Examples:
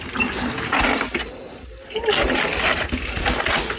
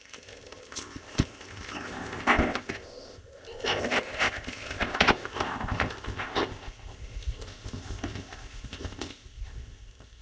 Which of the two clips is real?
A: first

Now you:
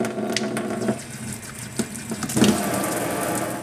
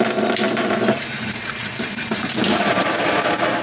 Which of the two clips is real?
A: first